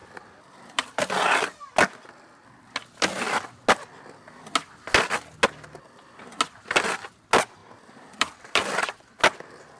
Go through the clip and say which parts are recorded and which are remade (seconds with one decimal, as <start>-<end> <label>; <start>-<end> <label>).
0.0-7.6 recorded; 7.6-9.2 remade; 9.2-9.8 recorded

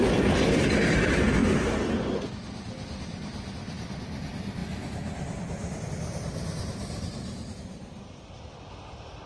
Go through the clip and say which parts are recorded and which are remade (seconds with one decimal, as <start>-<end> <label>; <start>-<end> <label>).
0.0-9.3 recorded

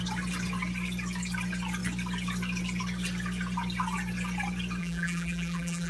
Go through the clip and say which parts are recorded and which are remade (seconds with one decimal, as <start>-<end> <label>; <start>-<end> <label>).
0.0-4.8 recorded; 4.8-5.9 remade

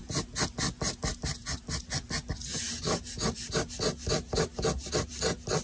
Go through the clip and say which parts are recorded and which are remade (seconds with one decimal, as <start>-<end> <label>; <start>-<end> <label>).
0.0-5.6 recorded

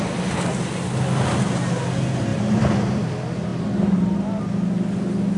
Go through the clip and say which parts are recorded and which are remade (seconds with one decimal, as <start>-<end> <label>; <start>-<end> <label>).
0.0-2.3 recorded; 2.3-3.1 remade; 3.1-5.4 recorded